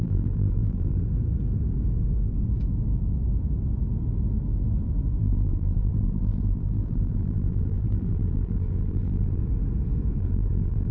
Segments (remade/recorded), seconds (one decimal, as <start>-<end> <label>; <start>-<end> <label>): 0.0-1.0 remade; 1.0-5.2 recorded; 5.2-9.4 remade; 9.4-10.2 recorded; 10.2-10.9 remade